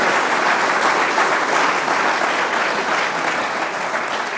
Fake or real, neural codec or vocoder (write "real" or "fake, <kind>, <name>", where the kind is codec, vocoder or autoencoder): real